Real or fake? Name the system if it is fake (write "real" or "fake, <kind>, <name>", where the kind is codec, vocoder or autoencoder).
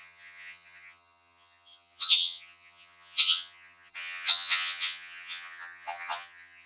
fake, vocoder, HiFi-GAN